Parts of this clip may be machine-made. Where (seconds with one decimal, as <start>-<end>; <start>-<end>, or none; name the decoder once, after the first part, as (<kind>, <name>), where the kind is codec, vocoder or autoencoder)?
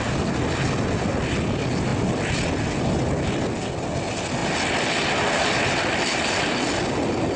none